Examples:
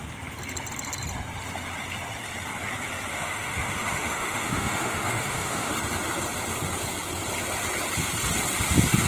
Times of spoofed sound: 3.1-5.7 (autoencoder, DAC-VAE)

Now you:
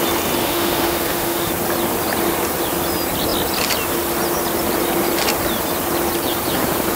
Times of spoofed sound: 0.4-1.5 (autoencoder, DAC-VAE)

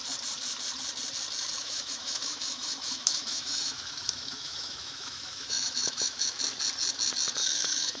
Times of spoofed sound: 1.6-6.4 (autoencoder, DAC-VAE); 7.4-8.0

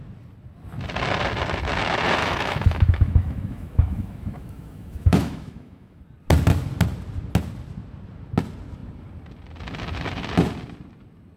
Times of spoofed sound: 2.2-6.0 (autoencoder, DAC-VAE)